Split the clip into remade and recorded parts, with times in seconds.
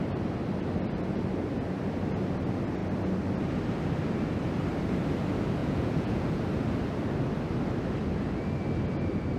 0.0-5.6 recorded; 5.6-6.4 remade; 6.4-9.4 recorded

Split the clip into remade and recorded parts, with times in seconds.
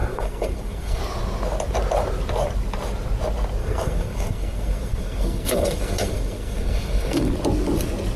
0.0-1.0 remade; 1.0-3.6 recorded; 3.6-7.3 remade; 7.3-8.2 recorded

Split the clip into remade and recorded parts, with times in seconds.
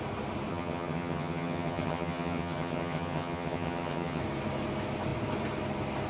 0.0-0.5 recorded; 0.5-4.2 remade; 4.2-6.1 recorded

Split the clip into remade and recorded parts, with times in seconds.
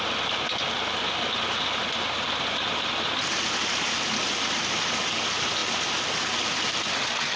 0.0-7.4 recorded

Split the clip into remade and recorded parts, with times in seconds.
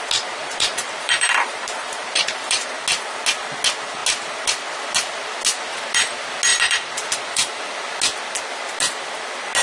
0.0-0.4 recorded; 0.4-2.7 remade; 2.7-6.5 recorded; 6.5-7.6 remade; 7.6-9.6 recorded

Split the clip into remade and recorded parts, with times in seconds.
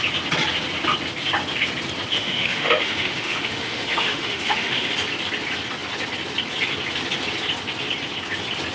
0.0-2.1 recorded; 2.1-4.9 remade; 4.9-8.7 recorded